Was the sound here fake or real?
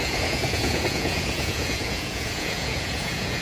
fake